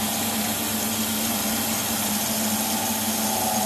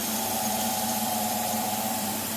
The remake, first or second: second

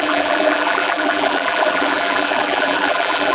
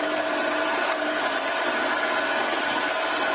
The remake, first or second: first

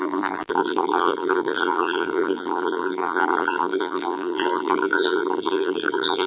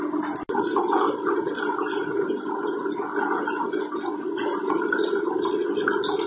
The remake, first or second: first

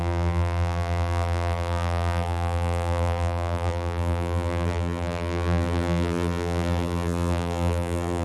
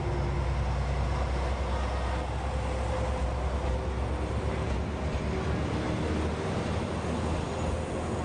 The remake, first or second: first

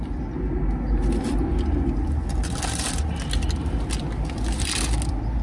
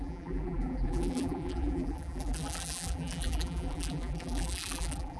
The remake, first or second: second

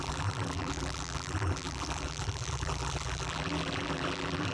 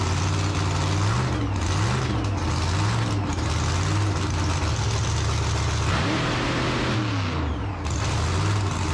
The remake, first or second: first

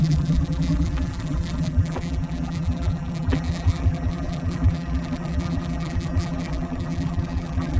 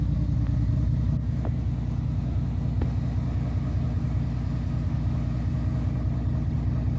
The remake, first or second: first